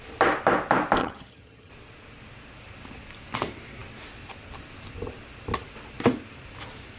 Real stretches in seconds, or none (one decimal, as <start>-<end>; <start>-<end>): 0.0-1.0; 1.7-7.0